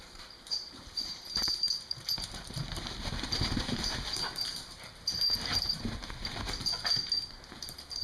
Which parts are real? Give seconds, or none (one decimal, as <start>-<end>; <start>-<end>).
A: 6.2-7.3